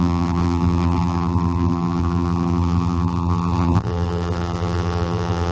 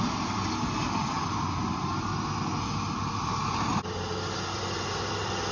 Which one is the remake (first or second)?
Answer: first